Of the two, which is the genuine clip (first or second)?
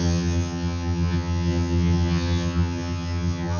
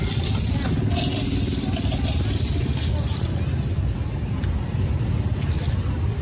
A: second